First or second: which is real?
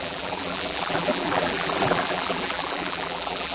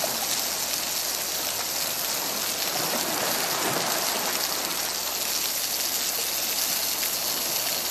second